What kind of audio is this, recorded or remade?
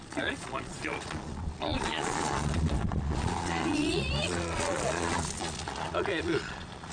remade